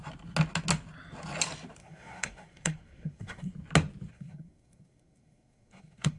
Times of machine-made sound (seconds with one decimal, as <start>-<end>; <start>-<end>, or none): 1.8-3.5; 4.1-6.2